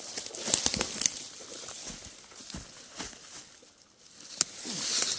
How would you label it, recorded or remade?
recorded